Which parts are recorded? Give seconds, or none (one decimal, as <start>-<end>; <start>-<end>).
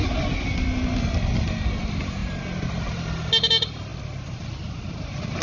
0.0-5.4